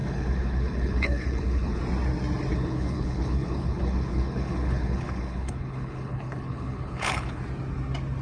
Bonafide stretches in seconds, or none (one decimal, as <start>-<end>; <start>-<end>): 1.8-2.5; 7.4-8.2